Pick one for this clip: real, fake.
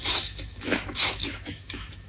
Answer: fake